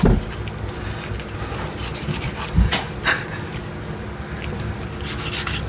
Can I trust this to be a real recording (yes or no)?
yes